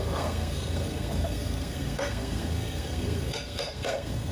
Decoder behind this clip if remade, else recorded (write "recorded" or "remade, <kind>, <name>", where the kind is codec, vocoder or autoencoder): remade, codec, SNAC